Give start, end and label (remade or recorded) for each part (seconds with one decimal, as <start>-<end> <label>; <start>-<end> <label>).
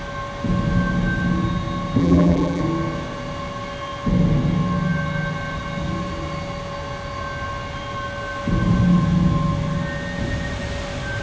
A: 0.0-2.0 recorded; 2.0-2.6 remade; 2.6-11.2 recorded